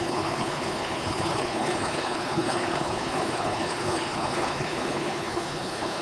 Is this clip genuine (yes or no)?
no